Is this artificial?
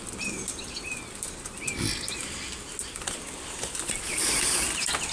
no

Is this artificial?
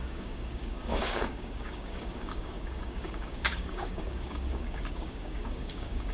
yes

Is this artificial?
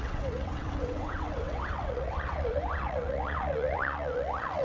yes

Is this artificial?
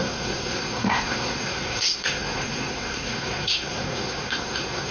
yes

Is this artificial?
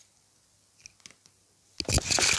no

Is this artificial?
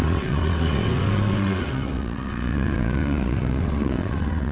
yes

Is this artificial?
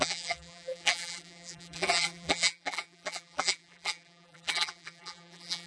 yes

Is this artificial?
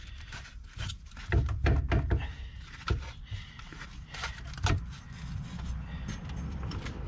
no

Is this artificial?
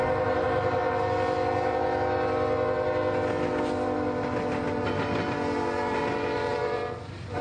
no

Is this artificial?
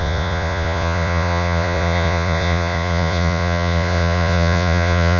yes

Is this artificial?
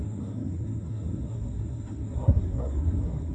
yes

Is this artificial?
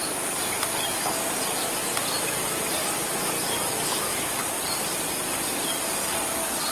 no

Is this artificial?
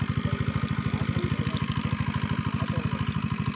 no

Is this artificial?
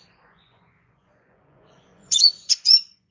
yes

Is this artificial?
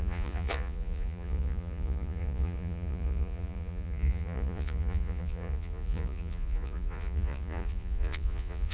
yes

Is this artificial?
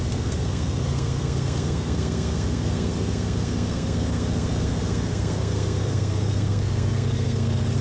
yes